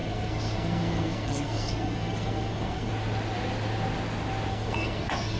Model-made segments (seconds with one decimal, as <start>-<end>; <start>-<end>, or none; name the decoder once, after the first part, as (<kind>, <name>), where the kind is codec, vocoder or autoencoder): 0.0-2.9 (codec, SNAC); 4.5-5.4